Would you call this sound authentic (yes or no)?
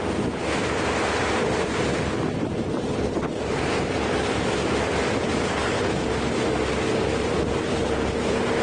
yes